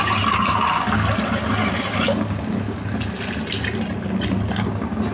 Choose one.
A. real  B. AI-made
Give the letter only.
A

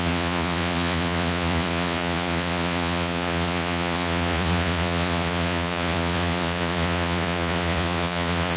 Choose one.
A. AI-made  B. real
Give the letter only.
A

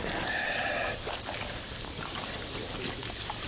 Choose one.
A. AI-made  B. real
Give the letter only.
B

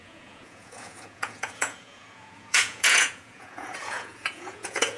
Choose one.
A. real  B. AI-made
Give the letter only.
B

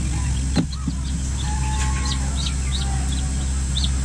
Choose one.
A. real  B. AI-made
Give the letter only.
A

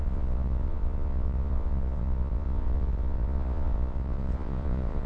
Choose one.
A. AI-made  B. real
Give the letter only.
A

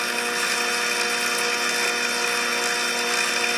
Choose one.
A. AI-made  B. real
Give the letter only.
B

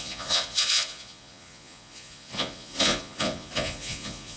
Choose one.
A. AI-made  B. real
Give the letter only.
A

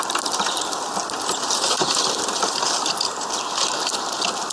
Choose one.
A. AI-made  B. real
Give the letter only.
B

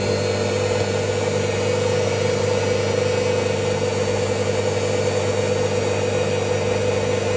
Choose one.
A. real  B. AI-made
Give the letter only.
A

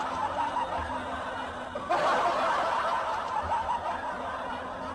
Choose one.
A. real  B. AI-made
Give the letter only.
A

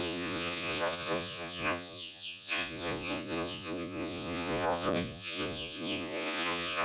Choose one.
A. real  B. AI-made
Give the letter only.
B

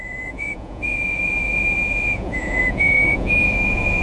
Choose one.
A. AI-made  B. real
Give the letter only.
A